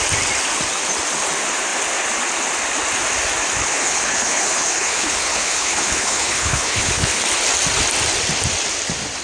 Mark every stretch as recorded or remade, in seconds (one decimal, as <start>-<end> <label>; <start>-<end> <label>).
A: 0.0-3.6 recorded; 3.6-7.2 remade; 7.2-9.2 recorded